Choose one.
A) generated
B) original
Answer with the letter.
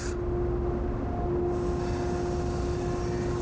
B